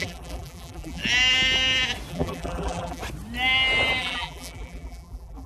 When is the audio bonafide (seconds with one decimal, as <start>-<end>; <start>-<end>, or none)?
1.0-2.1; 3.0-4.0

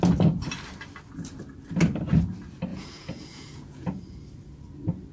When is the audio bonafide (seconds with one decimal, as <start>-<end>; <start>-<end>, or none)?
0.0-2.7; 4.0-5.1